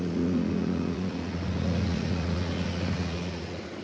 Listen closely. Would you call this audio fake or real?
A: fake